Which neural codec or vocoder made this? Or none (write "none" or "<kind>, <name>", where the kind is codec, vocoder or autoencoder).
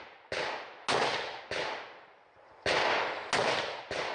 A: none